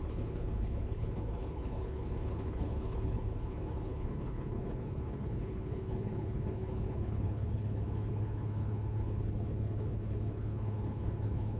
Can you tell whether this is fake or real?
fake